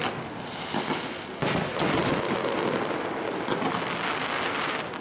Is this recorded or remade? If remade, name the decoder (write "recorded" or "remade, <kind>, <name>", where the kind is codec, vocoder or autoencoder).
recorded